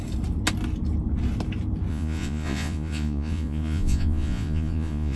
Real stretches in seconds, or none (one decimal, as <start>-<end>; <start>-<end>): 0.0-1.9

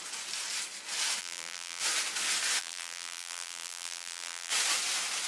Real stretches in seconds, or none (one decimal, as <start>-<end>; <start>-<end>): 0.0-1.2; 1.8-2.6; 4.5-5.3

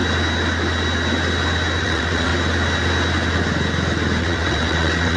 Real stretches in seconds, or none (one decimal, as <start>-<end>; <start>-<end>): 0.0-1.8; 2.3-4.2

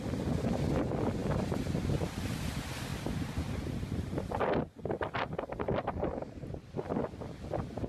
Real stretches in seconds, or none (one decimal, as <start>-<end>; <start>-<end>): 0.0-7.9

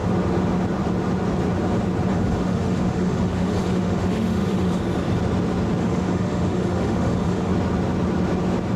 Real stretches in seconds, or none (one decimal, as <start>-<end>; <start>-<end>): 0.0-2.1; 4.8-5.8; 7.5-8.8

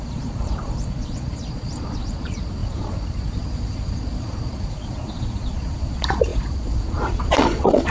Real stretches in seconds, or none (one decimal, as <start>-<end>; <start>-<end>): none

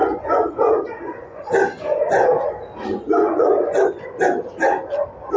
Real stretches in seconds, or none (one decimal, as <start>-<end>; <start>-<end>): 1.5-2.9; 4.2-5.4